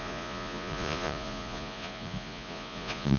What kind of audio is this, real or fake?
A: fake